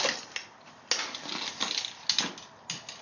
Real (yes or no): yes